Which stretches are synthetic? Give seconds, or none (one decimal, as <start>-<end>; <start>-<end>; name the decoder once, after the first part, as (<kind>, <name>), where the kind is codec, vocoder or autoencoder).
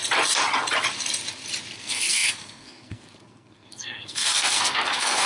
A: 1.8-5.3 (codec, SNAC)